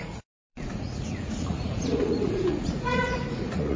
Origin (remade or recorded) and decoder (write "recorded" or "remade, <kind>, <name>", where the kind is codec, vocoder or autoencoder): remade, vocoder, Vocos